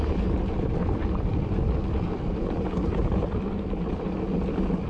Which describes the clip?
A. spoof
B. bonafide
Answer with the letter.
B